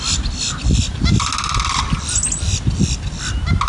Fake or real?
real